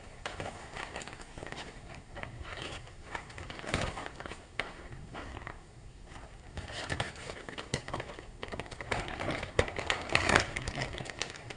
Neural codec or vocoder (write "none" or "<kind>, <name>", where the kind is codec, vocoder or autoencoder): codec, SNAC